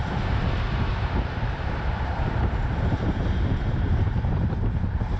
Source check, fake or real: fake